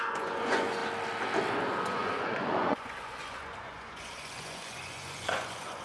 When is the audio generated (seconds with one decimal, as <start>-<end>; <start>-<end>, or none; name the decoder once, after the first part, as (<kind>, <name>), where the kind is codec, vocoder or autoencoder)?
0.0-0.8 (vocoder, Vocos); 1.5-5.8